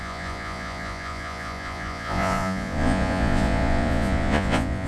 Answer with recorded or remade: remade